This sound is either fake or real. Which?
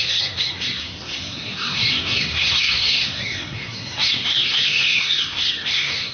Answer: fake